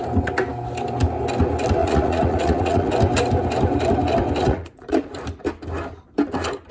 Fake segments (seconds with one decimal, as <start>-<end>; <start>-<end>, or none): 1.8-2.9; 4.4-5.0